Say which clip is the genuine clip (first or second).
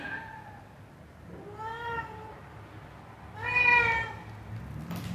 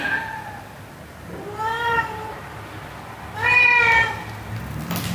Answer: first